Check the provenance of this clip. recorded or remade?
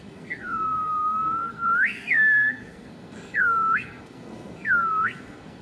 remade